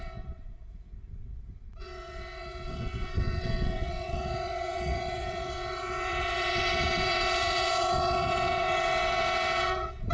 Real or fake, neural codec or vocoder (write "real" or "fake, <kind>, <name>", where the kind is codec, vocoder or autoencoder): fake, vocoder, WaveNeXt